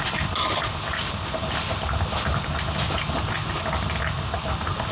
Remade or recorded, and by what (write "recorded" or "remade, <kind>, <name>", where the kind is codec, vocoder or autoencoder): recorded